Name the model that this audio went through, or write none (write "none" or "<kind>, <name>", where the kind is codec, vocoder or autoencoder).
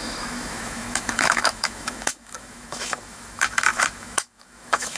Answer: autoencoder, DAC-VAE